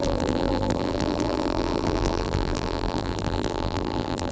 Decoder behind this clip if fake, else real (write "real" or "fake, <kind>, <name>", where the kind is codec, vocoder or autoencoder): fake, vocoder, BigVGAN v2